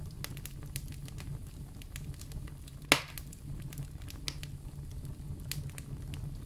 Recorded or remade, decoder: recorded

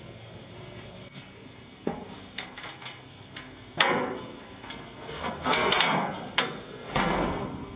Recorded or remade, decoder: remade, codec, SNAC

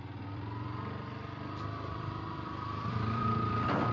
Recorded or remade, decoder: remade, vocoder, BigVGAN v2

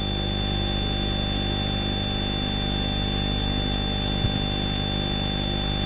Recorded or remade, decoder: recorded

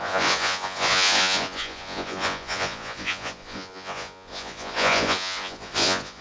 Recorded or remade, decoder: remade, vocoder, Vocos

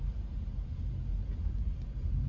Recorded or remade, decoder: recorded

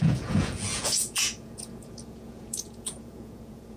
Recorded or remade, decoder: remade, vocoder, Vocos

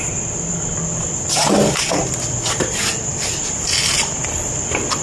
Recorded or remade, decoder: recorded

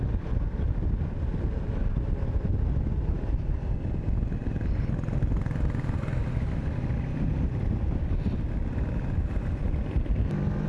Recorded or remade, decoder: recorded